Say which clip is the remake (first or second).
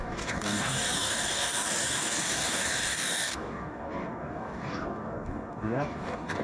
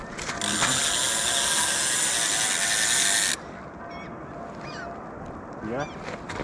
first